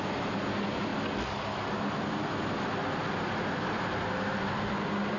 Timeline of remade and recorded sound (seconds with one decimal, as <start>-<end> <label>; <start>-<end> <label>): 0.0-5.2 recorded